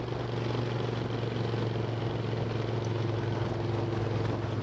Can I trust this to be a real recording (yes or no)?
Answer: yes